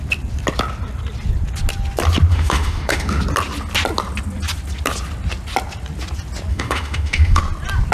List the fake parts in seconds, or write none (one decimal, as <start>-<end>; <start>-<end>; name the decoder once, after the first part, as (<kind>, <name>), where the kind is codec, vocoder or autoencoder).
2.3-3.2 (autoencoder, DAC-VAE); 6.5-7.4